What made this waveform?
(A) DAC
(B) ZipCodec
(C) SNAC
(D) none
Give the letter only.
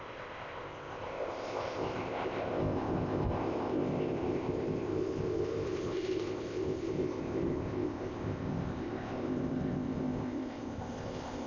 B